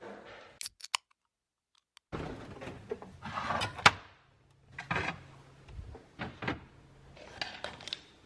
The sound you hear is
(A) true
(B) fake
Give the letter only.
A